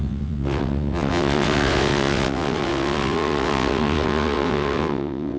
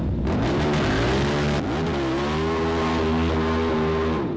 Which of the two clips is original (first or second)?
second